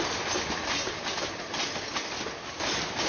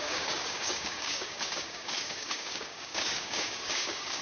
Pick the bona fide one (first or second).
first